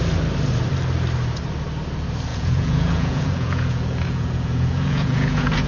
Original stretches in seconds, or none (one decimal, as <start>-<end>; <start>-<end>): 0.0-2.3